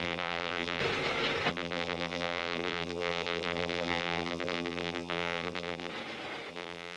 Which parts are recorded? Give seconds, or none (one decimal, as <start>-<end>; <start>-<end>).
0.8-1.5; 5.9-6.5